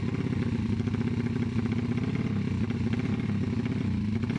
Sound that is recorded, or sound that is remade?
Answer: recorded